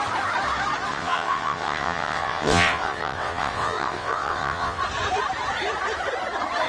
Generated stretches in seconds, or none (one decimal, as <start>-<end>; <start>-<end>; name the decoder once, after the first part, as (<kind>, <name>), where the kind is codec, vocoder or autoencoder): 0.9-4.8 (vocoder, WaveNeXt)